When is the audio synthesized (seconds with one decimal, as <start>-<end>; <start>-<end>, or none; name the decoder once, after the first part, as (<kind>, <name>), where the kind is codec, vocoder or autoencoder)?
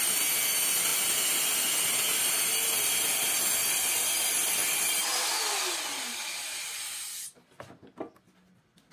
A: none